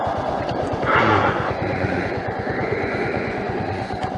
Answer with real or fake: fake